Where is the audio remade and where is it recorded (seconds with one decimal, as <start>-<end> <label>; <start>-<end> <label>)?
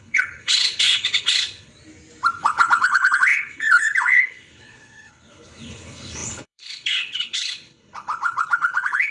0.0-1.7 remade; 1.7-2.4 recorded; 2.4-9.1 remade